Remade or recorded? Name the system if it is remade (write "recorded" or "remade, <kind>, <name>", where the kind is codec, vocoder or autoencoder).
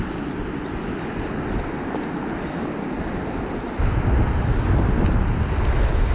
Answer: recorded